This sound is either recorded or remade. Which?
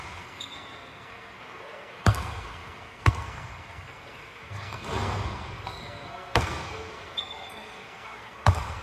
remade